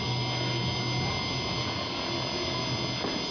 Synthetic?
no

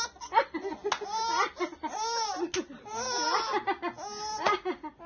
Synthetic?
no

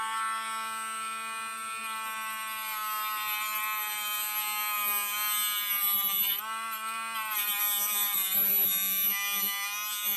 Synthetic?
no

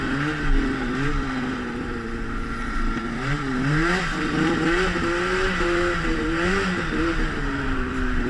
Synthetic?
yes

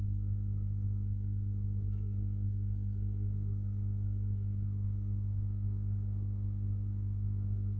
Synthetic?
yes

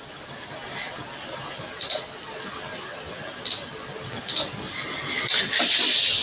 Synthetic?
no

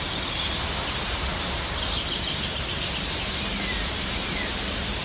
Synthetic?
no